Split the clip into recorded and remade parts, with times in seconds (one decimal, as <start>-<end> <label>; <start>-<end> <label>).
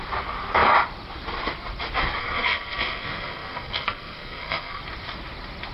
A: 0.0-2.2 recorded; 2.2-4.8 remade; 4.8-5.7 recorded